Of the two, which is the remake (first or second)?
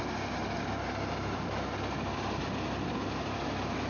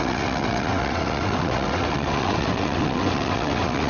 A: second